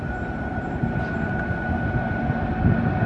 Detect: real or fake real